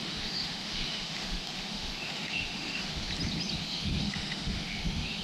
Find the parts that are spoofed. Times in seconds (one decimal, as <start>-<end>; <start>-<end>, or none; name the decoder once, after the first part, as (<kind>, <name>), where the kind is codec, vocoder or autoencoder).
0.0-3.1 (autoencoder, DAC-VAE); 3.6-5.2